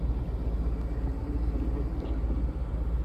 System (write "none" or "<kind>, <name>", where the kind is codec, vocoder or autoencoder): none